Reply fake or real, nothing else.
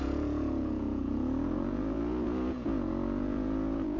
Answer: fake